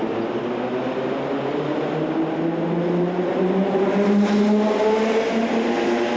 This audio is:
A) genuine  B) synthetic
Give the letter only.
A